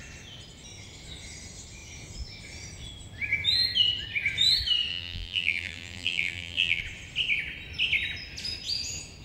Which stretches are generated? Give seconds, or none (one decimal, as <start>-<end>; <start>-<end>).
4.9-6.8